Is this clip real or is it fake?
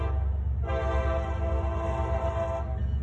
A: real